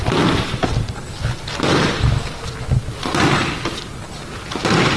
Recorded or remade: recorded